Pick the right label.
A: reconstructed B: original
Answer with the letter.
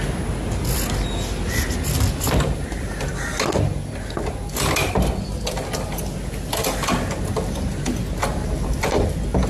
B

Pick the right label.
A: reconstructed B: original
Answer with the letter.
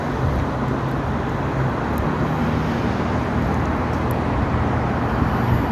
B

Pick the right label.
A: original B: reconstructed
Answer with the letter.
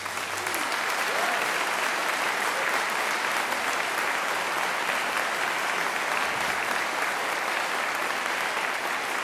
A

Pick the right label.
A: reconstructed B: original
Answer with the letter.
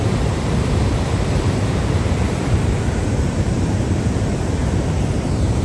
A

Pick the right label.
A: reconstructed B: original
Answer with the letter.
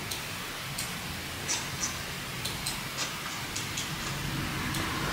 B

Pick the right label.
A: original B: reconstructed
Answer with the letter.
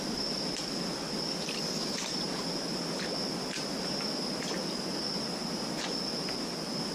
A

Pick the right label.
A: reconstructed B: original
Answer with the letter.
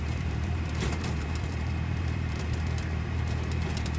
A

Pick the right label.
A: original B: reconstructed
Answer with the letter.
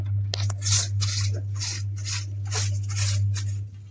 A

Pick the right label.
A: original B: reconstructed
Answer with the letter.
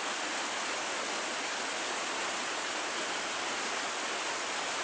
A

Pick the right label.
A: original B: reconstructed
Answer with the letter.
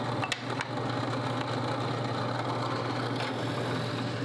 A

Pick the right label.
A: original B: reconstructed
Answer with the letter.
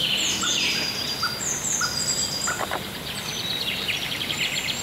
A